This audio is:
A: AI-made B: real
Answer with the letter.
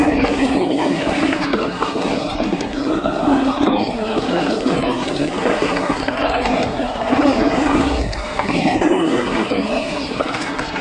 A